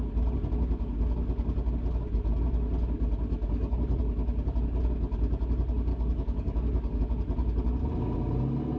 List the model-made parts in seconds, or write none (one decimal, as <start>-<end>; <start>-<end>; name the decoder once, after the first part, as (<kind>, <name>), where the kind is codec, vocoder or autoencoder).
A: 3.4-4.0 (codec, DAC); 5.9-7.0